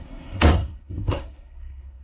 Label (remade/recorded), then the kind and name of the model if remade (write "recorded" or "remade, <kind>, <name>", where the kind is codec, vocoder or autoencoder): remade, codec, SNAC